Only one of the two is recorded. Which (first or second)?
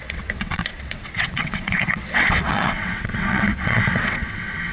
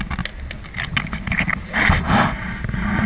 second